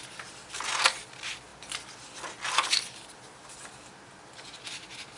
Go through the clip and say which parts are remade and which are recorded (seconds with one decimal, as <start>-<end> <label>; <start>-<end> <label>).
0.0-5.2 recorded